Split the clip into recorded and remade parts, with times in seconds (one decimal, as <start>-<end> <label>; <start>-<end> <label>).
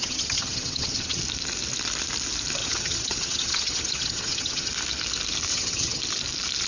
0.0-1.2 remade; 1.2-2.6 recorded; 2.6-4.7 remade; 4.7-5.5 recorded; 5.5-6.0 remade; 6.0-6.7 recorded